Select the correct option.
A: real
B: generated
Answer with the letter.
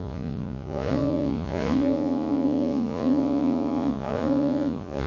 B